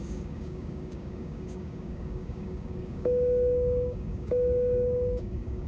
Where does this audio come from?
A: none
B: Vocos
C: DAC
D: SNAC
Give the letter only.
C